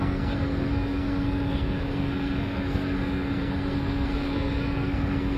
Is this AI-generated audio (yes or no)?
yes